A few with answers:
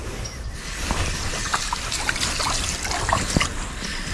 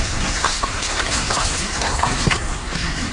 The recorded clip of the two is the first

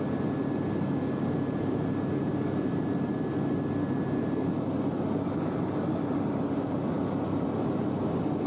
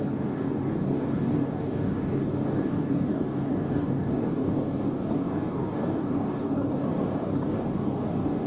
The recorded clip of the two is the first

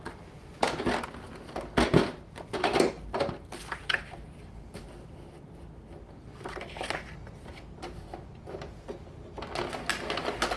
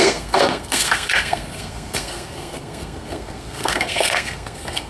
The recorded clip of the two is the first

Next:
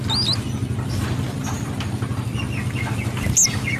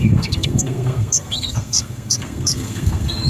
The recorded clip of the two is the first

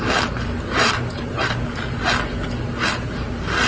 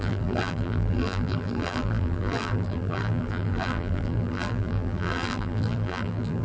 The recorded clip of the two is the first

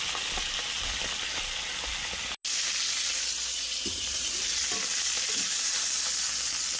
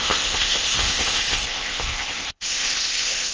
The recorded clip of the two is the first